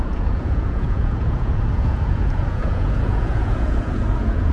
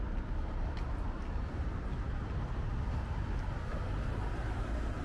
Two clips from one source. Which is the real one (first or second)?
second